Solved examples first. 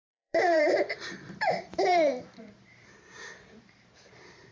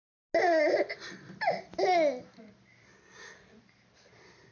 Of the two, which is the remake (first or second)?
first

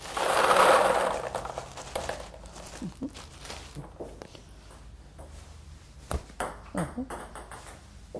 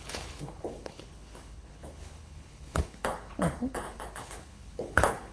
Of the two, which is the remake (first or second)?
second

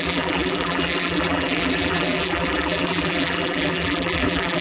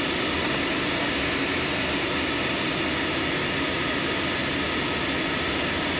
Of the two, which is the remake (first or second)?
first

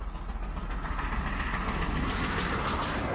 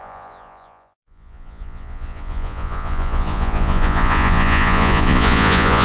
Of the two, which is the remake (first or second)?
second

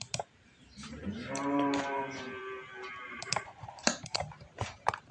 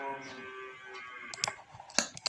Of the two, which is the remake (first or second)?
first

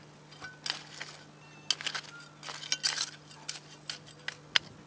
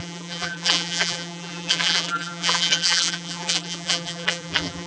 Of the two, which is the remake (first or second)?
second